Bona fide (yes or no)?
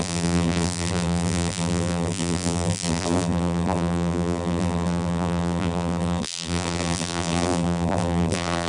no